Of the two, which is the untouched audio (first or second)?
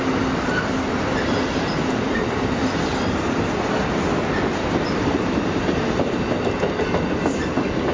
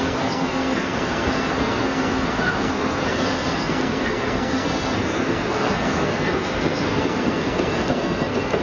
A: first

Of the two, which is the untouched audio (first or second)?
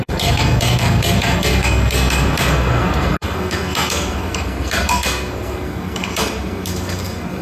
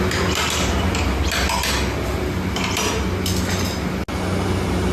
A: second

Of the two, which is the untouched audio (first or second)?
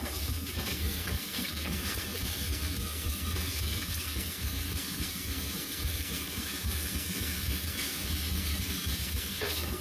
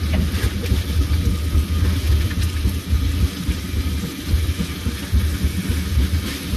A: second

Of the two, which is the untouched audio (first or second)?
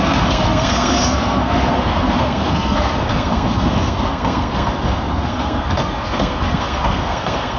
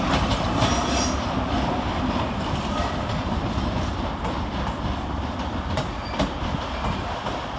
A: second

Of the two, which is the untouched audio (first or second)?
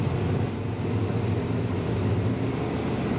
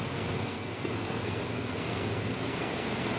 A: first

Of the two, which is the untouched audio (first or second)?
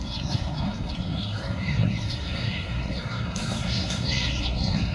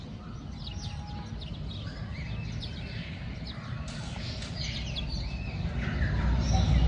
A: second